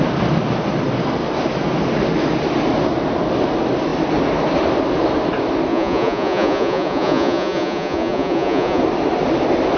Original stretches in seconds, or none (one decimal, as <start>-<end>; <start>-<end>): 0.0-5.7; 8.8-9.8